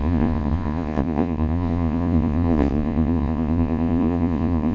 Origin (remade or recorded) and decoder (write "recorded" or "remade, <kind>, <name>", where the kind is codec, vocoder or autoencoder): remade, vocoder, Vocos